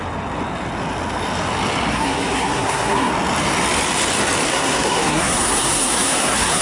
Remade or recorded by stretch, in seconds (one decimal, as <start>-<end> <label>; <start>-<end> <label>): 0.0-1.9 recorded; 1.9-3.1 remade; 3.1-4.5 recorded; 4.5-6.6 remade